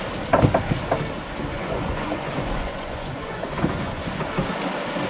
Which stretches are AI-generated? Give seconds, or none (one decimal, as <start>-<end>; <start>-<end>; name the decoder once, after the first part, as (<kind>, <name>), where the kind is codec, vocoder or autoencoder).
1.5-4.3 (vocoder, Vocos)